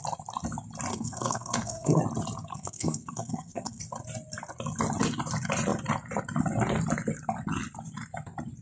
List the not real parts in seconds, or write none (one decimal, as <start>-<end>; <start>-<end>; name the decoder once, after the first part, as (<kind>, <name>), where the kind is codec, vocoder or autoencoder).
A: 0.9-2.0 (codec, SNAC); 2.5-3.8